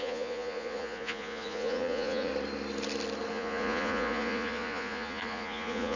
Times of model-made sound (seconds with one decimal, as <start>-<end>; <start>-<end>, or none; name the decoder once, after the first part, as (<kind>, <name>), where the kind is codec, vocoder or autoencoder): 0.0-2.3 (vocoder, Vocos); 3.3-6.0